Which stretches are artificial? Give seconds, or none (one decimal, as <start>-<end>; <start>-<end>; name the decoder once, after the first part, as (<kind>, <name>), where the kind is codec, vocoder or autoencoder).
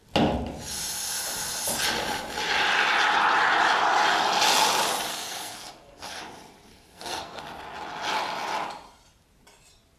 5.1-6.2 (codec, SNAC); 6.7-7.4